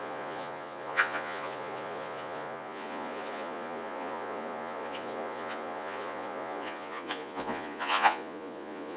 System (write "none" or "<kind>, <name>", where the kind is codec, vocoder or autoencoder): vocoder, Vocos